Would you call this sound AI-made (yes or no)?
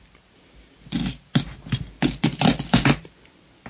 no